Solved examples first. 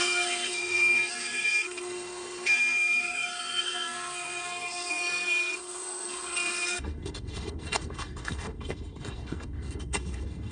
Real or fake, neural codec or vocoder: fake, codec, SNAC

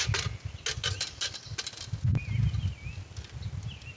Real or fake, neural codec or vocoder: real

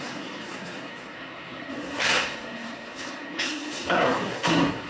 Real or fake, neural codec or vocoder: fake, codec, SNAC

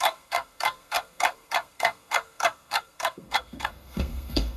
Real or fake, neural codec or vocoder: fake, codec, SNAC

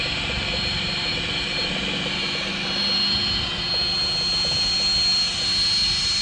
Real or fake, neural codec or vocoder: real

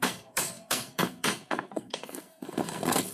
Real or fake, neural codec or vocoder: fake, codec, SNAC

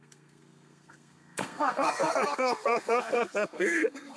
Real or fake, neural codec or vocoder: fake, codec, SNAC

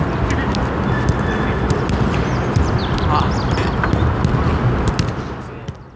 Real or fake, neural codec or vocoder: real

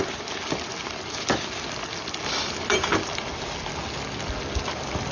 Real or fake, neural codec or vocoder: real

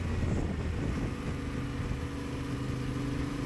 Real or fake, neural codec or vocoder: real